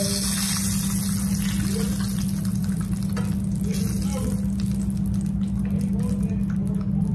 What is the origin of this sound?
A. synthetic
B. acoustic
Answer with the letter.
B